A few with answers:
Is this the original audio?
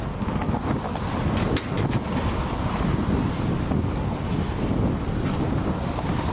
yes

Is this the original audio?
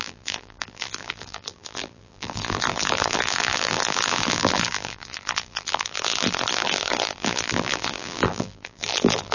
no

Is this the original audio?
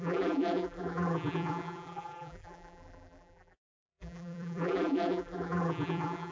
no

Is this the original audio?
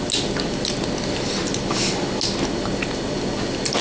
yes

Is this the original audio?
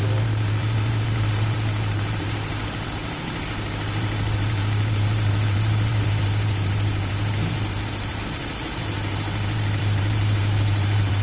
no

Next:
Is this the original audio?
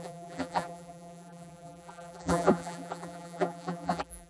no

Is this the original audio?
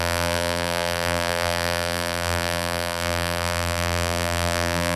no